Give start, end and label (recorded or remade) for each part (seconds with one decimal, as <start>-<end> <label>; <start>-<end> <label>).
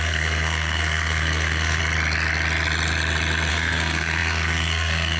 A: 0.0-1.8 remade; 1.8-3.5 recorded; 3.5-5.2 remade